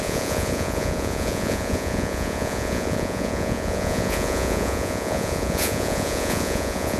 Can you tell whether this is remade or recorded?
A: remade